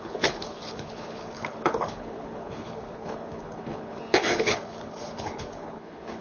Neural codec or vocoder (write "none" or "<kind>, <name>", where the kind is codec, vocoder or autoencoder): codec, HILCodec